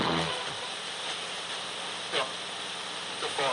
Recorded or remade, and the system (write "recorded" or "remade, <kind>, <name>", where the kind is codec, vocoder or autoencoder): recorded